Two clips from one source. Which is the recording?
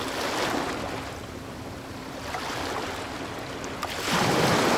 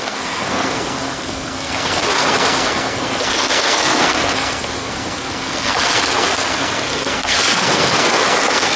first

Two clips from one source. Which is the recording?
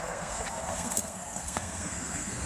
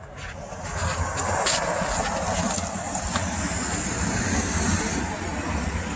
second